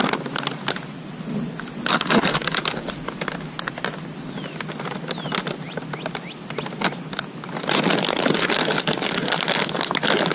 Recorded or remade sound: recorded